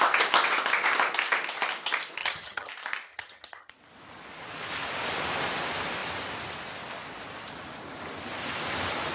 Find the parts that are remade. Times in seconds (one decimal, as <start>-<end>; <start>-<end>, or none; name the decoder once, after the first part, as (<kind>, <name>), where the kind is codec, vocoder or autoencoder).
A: 2.2-2.7 (vocoder, HiFi-GAN); 3.1-3.7